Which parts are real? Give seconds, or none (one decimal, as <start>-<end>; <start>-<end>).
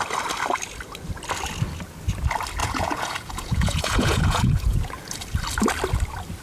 0.0-2.6; 4.9-6.4